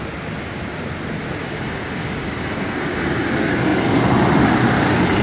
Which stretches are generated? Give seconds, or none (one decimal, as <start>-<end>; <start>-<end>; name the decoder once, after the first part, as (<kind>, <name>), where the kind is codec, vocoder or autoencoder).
1.4-3.3 (codec, DAC)

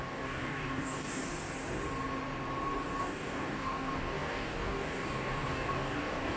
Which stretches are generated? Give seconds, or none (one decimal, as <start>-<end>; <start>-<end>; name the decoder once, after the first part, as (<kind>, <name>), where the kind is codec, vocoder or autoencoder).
0.0-1.2 (codec, DAC); 3.0-6.4

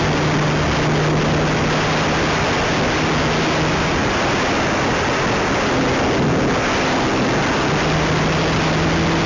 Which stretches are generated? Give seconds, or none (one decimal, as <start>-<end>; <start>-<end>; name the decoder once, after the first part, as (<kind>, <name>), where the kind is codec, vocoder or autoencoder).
none

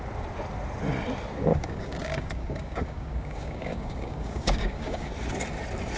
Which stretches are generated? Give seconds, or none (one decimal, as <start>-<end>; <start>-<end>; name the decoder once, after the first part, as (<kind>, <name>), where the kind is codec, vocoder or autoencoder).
1.5-5.1 (codec, DAC)